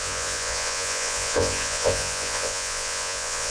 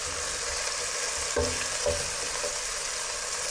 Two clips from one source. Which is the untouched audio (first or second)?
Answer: second